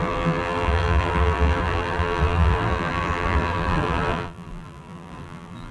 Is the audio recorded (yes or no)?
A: no